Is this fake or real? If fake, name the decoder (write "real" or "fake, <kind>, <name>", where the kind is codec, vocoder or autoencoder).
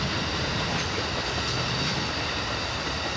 real